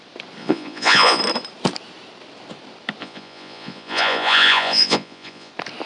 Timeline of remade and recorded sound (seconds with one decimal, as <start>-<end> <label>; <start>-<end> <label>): 0.0-0.4 recorded; 0.4-1.2 remade; 1.2-3.0 recorded; 3.0-5.5 remade; 5.5-5.9 recorded